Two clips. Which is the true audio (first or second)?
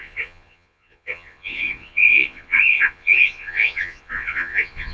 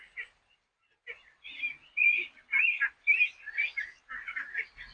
second